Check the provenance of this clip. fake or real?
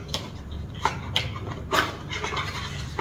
real